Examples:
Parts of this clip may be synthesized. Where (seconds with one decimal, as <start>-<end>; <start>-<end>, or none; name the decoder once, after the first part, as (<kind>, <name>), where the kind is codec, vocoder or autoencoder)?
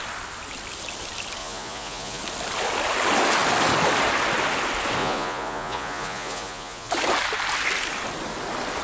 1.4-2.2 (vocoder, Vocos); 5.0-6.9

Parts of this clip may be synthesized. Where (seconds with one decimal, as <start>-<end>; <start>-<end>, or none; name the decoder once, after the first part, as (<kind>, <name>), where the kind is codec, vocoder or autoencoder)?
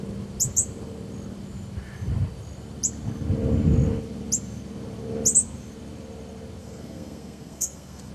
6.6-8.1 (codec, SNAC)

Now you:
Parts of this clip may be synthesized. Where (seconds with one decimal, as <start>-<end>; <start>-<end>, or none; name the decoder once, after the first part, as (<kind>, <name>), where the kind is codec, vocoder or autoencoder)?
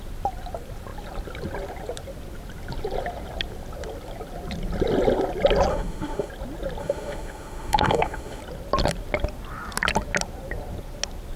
5.7-6.3 (autoencoder, DAC-VAE); 6.8-8.4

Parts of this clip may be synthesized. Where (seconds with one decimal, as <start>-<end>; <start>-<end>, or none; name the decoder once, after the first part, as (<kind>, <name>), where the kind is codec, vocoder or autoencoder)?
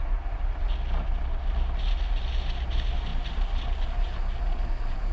0.0-0.6 (vocoder, BigVGAN v2)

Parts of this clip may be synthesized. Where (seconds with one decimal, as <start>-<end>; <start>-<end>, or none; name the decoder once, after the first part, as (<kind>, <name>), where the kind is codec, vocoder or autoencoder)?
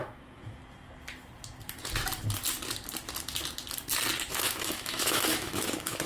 0.0-0.6 (autoencoder, DAC-VAE); 4.3-6.1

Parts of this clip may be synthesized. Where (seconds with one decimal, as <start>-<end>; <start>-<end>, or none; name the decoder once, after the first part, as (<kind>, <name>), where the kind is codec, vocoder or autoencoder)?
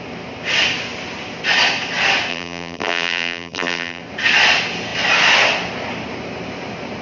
2.3-4.0 (vocoder, BigVGAN v2)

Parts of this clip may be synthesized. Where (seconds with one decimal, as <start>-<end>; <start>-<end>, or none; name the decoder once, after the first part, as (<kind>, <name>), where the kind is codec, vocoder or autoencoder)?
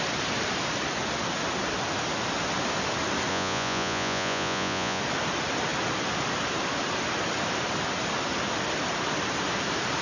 3.3-5.0 (vocoder, Vocos)